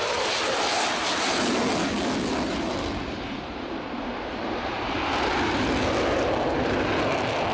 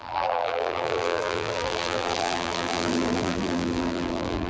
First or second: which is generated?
second